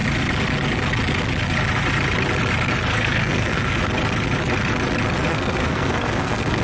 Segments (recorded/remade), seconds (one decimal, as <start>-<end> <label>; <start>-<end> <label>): 0.0-2.9 recorded; 2.9-3.8 remade; 3.8-5.3 recorded; 5.3-6.6 remade